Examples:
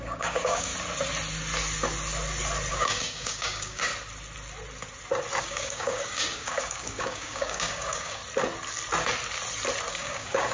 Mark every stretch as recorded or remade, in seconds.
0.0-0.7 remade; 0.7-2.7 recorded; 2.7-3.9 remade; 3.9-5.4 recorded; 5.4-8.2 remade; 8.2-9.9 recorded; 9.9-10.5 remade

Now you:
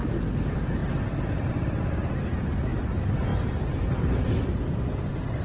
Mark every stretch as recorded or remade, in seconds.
0.0-3.3 recorded; 3.3-4.2 remade; 4.2-5.4 recorded